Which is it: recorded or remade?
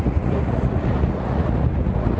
remade